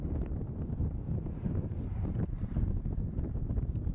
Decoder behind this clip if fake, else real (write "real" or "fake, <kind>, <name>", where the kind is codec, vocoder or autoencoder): real